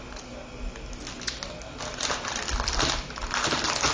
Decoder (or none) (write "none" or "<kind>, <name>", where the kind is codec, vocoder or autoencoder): none